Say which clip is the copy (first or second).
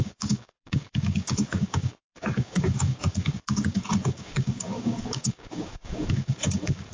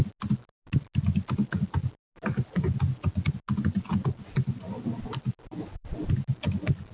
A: first